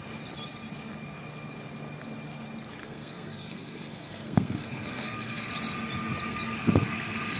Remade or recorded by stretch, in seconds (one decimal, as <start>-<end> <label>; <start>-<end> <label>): 0.0-2.8 recorded; 2.8-5.5 remade; 5.5-6.3 recorded; 6.3-7.4 remade